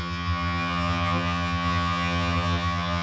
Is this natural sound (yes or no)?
no